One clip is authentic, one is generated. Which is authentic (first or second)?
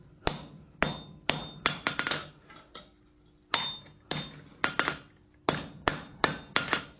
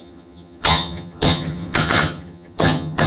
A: first